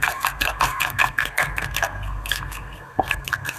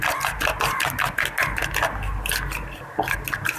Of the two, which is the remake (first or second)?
first